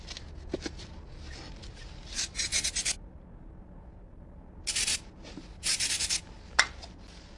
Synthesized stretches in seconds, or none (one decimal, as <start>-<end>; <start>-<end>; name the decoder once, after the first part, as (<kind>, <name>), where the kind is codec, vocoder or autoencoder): none